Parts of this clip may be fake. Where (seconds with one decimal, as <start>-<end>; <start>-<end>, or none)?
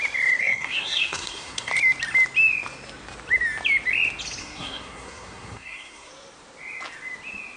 0.4-1.7; 4.4-6.1